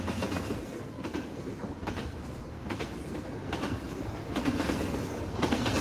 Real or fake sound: fake